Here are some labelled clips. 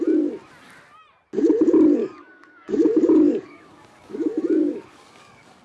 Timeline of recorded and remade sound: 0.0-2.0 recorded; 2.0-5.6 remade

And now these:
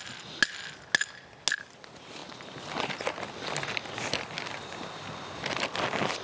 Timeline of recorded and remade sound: 0.0-6.2 recorded

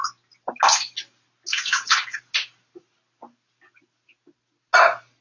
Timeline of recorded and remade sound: 0.0-1.5 recorded; 1.5-2.2 remade; 2.2-5.2 recorded

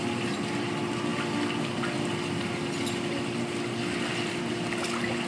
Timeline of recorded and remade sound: 0.0-5.3 recorded

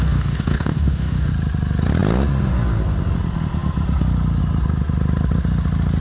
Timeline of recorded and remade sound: 0.0-1.3 remade; 1.3-6.0 recorded

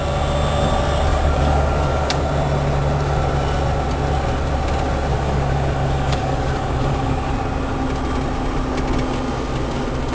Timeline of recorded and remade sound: 0.0-1.1 recorded; 1.1-2.2 remade; 2.2-5.1 recorded; 5.1-7.3 remade; 7.3-10.1 recorded